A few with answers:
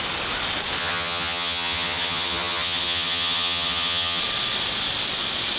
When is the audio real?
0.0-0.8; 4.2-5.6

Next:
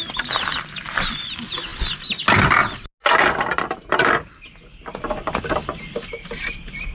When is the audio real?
0.0-6.9

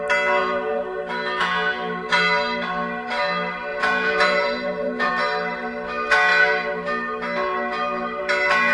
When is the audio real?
0.0-0.4; 1.0-3.7; 5.1-8.7

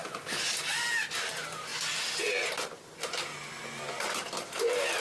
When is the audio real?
0.0-1.1; 1.7-5.0

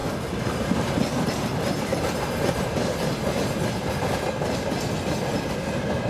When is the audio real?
0.0-3.7

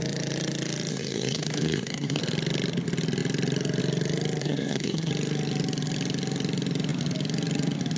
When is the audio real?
0.0-0.9; 2.2-4.4; 5.1-8.0

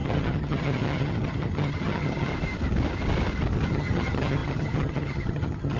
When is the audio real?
2.3-3.7